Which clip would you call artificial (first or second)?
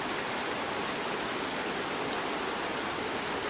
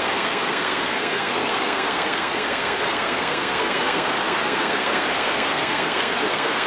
second